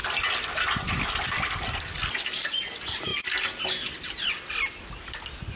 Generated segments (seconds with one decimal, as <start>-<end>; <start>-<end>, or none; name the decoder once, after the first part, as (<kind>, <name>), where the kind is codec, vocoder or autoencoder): none